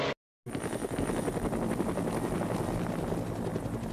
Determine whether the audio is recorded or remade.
recorded